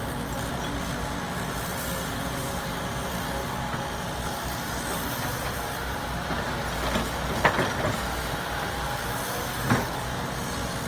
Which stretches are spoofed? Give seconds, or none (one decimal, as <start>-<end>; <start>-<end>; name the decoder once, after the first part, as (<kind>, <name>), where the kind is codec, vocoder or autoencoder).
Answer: 1.7-3.1 (vocoder, BigVGAN v2)